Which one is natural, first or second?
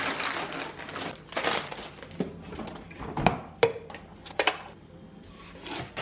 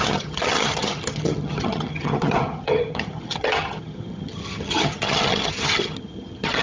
first